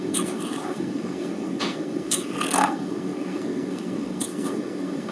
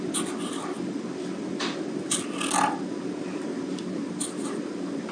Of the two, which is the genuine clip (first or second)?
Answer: second